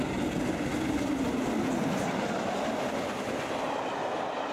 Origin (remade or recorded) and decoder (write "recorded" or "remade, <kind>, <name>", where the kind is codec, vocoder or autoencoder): recorded